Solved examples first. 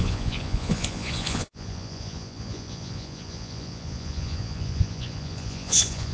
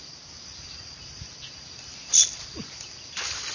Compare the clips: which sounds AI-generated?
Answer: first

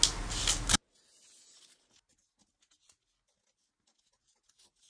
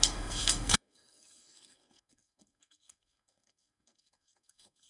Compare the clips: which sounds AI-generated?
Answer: second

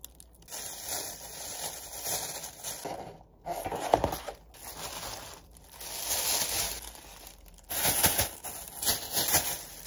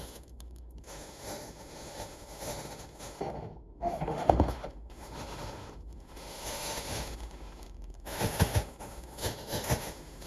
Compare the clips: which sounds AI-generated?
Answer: second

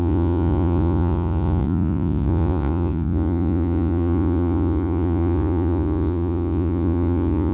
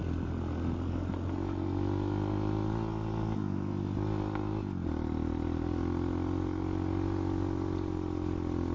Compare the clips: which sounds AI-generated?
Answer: first